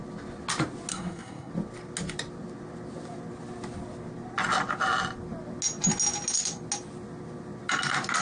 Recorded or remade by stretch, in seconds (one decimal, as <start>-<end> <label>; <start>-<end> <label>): 0.0-0.9 recorded; 0.9-1.5 remade; 1.5-8.2 recorded